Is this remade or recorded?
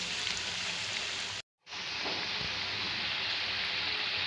recorded